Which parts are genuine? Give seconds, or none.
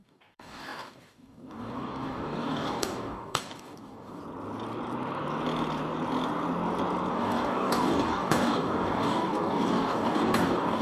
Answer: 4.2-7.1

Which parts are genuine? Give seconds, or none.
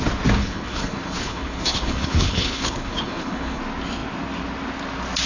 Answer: 0.0-0.4; 3.6-5.3